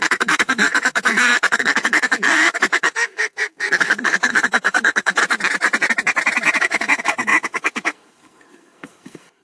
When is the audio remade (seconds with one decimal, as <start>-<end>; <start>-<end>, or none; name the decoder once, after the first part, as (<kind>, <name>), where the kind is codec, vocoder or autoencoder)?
0.0-5.2 (codec, SNAC); 6.6-9.4